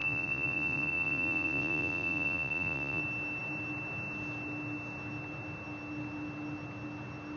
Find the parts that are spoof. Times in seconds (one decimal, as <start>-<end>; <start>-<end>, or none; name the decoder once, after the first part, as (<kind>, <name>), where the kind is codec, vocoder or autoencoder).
0.0-3.0 (vocoder, Vocos)